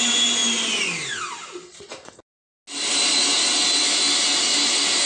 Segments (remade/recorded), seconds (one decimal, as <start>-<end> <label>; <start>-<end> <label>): 0.0-5.1 recorded